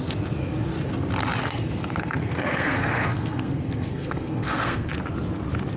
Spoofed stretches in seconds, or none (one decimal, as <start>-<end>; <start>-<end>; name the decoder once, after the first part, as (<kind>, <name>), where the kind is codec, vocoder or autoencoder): 1.4-4.9 (codec, SNAC)